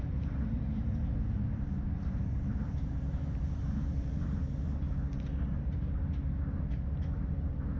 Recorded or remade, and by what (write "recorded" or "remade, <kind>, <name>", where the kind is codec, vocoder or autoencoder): remade, vocoder, BigVGAN v2